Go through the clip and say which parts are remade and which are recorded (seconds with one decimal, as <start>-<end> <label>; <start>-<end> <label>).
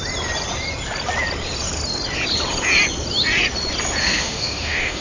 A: 0.0-4.0 recorded; 4.0-5.0 remade